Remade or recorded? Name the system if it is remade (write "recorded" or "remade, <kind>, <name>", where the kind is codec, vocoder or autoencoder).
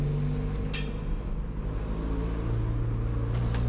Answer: recorded